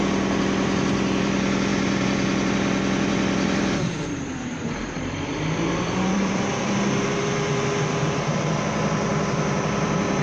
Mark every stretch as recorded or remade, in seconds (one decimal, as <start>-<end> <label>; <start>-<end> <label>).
0.0-10.2 remade